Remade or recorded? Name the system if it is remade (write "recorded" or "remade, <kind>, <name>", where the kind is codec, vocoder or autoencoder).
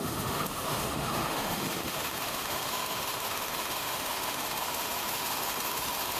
remade, autoencoder, DAC-VAE